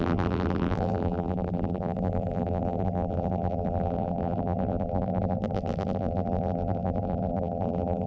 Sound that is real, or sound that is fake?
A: fake